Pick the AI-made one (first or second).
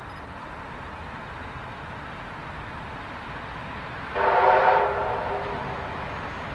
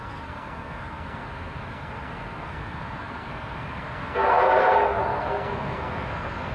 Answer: second